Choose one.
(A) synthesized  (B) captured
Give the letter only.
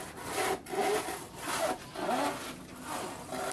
B